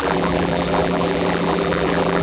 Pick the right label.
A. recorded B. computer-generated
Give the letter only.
B